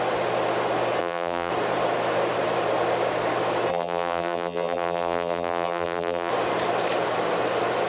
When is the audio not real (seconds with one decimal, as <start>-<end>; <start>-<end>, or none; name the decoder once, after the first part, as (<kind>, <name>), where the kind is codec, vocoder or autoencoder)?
1.0-1.5 (vocoder, BigVGAN v2); 3.7-6.3